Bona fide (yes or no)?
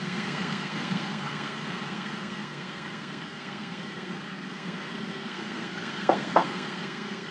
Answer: no